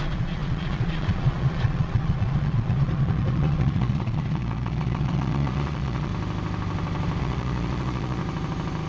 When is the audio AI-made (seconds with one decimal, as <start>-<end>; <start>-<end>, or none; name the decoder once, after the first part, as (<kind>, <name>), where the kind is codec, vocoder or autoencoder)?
0.0-6.1 (vocoder, Vocos); 7.2-8.2